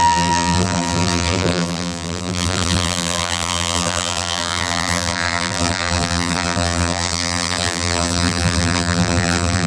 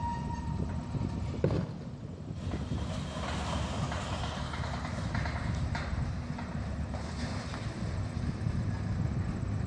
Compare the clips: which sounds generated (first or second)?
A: first